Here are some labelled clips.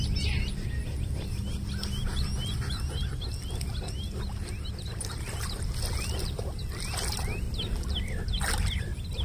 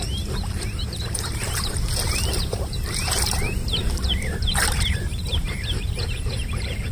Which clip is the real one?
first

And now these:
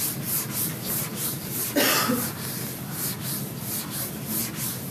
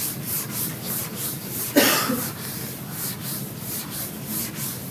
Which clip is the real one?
first